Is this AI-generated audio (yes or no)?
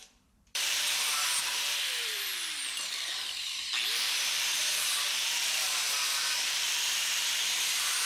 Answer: yes